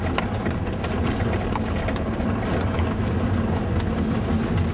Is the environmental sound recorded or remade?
recorded